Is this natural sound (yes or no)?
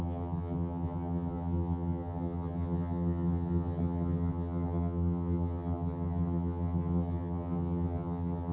no